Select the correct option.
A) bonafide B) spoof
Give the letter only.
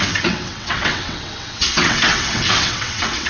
B